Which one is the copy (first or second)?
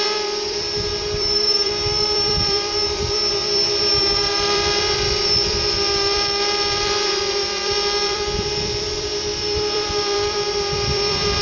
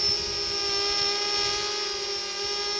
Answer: first